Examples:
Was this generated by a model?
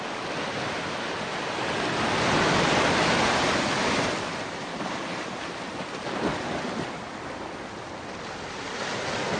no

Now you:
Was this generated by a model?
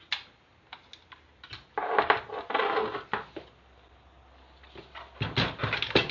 no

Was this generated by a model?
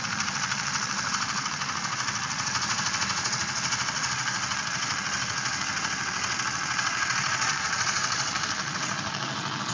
yes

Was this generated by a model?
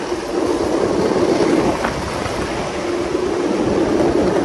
no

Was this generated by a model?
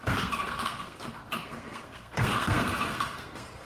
yes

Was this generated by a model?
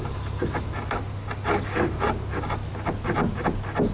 no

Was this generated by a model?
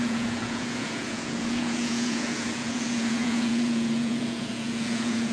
yes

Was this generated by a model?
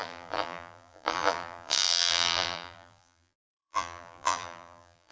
yes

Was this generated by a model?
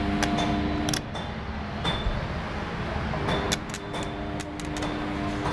no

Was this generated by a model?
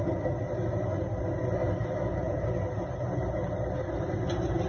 no